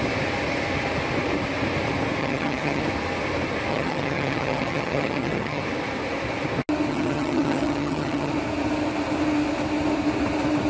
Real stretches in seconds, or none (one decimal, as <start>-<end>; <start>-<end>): 0.0-2.2; 2.8-3.7; 5.6-6.9; 8.3-10.7